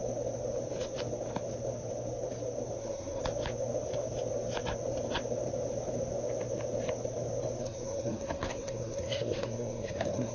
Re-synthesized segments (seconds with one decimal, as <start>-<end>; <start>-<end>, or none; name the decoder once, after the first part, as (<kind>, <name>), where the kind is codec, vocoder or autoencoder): 2.8-3.2 (codec, SNAC); 7.6-10.3